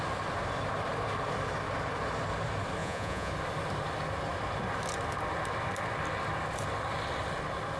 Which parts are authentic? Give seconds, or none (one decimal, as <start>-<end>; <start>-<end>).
0.0-2.8; 3.3-7.8